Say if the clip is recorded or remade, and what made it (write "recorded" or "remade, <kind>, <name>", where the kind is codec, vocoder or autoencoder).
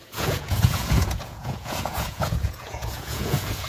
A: remade, vocoder, Vocos